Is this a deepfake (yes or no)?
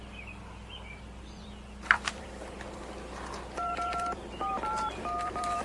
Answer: yes